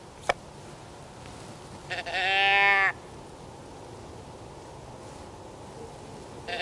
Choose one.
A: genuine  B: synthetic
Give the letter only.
A